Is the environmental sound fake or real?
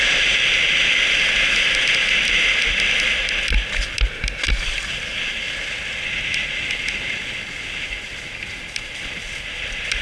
real